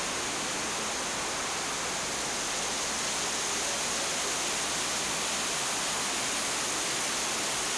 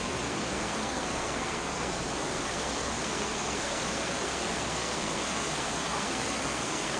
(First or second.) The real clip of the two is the first